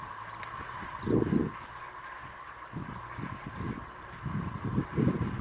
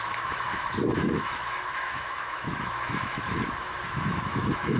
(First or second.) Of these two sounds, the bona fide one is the first